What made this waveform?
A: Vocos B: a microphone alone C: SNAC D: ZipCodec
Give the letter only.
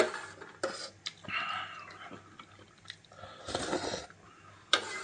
B